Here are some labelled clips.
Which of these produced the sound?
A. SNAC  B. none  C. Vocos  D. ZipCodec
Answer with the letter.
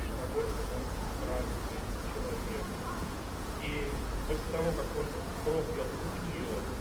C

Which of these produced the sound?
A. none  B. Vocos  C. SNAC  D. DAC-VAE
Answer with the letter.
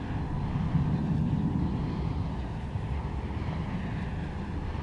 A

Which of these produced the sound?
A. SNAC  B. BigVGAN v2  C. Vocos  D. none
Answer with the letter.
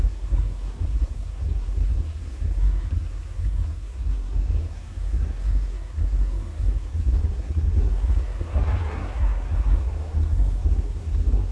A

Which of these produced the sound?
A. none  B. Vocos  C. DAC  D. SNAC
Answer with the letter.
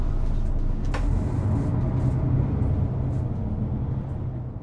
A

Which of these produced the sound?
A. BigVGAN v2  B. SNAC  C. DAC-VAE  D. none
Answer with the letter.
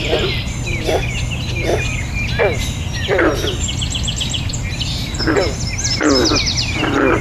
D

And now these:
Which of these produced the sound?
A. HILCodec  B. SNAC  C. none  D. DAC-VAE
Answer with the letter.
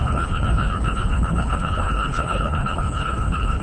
A